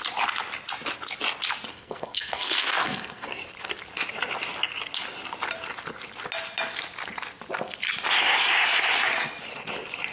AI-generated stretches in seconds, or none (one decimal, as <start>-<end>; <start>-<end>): 1.7-3.4